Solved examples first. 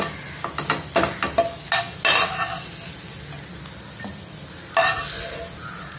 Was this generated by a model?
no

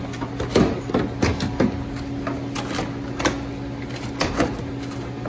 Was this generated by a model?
no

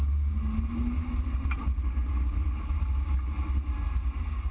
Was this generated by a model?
no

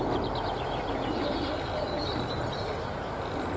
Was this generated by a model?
no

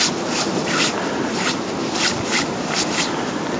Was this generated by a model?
no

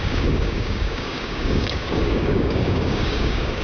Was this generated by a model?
yes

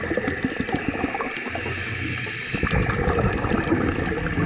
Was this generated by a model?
no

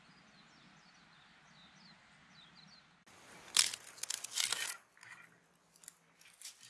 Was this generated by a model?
no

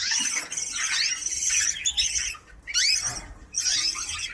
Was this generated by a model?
no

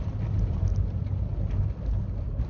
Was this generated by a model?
no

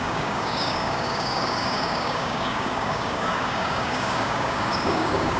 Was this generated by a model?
yes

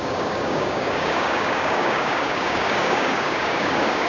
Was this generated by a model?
yes